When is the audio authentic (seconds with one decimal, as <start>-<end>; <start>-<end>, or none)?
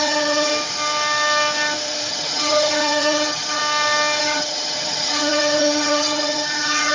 0.5-2.1; 3.6-4.2